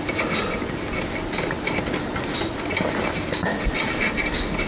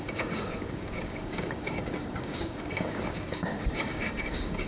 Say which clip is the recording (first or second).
first